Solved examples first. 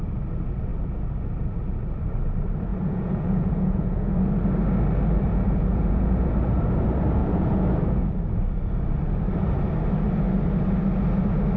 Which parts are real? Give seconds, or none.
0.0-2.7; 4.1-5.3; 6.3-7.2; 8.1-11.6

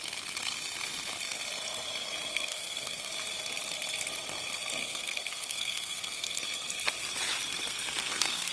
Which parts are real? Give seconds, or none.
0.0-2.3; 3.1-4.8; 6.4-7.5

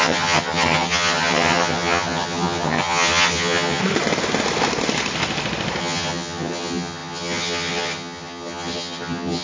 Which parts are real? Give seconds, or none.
3.8-5.8